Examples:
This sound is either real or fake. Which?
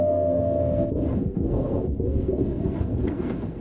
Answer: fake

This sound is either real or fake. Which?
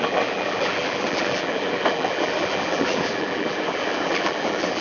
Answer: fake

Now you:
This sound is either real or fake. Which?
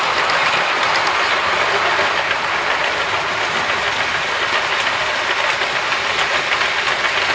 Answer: real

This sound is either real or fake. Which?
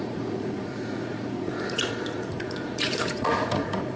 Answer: fake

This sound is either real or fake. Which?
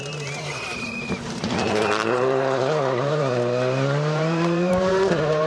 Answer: fake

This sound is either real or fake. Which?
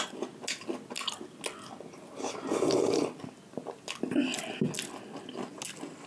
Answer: real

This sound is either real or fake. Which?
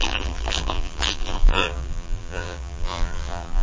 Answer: fake